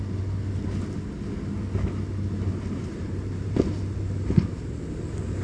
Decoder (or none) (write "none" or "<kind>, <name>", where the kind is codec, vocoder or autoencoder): none